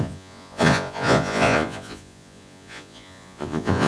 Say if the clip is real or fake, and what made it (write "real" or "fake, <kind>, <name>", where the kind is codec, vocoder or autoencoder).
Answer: fake, vocoder, Vocos